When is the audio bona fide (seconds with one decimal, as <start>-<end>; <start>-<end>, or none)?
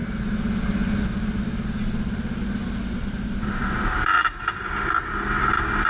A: 0.0-4.1; 4.7-5.9